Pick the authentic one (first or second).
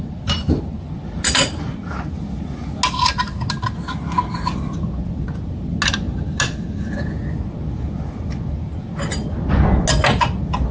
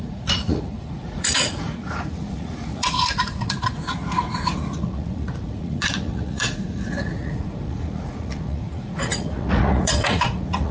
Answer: first